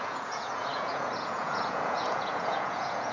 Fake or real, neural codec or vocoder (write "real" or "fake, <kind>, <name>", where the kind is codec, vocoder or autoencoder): fake, vocoder, Vocos